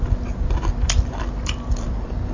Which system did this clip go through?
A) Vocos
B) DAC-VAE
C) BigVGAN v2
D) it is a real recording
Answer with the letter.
D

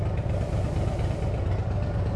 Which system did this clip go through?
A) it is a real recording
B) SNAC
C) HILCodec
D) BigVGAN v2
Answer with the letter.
A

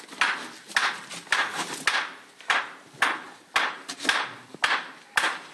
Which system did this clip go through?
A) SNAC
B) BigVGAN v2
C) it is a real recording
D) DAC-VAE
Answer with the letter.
C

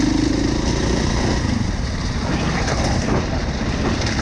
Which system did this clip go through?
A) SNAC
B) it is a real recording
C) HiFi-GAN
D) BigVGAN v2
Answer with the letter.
B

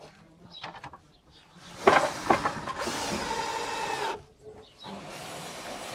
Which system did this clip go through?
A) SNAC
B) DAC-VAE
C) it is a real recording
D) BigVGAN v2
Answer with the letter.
C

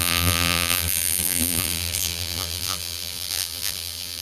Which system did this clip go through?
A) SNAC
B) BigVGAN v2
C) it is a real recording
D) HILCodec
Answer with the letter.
B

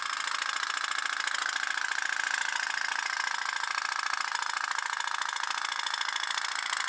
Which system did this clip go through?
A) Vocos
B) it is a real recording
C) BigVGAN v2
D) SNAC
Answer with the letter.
B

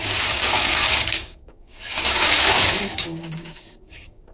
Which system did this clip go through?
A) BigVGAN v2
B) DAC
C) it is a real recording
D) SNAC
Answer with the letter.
B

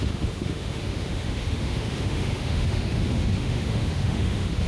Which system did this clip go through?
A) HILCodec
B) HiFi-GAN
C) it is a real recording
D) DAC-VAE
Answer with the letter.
D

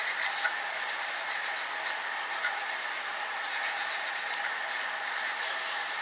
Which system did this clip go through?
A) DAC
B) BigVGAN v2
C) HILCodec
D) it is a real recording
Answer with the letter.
D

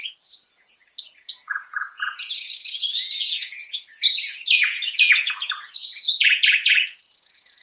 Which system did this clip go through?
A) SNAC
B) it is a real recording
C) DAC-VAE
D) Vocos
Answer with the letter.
D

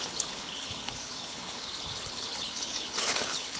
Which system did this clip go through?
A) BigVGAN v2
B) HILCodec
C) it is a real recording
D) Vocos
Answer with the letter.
B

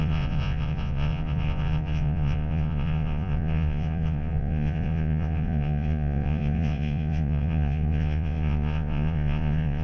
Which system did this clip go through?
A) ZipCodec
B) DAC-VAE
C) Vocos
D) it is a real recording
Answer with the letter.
C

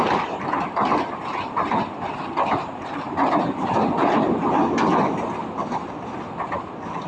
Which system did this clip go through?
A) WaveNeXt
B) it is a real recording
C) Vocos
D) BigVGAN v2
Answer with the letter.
B